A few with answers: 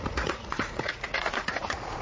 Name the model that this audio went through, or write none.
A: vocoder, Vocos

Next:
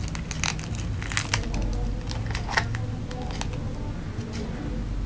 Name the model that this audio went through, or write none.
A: none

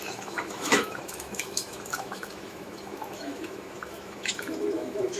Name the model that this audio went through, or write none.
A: autoencoder, DAC-VAE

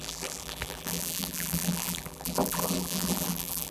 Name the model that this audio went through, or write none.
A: vocoder, BigVGAN v2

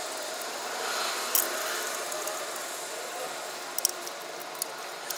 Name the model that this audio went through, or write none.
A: none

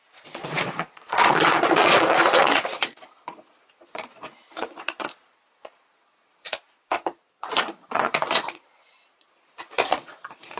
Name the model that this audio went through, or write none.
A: vocoder, Vocos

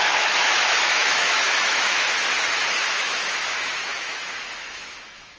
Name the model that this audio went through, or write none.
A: autoencoder, DAC-VAE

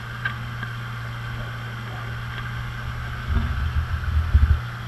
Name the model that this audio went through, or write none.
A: none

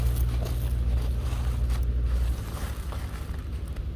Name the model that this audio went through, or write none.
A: none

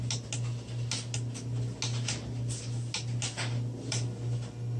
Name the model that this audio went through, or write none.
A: none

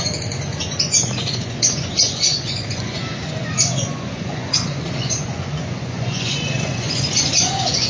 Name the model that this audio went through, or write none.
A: vocoder, Vocos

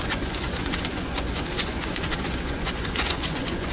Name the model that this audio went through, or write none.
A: vocoder, Vocos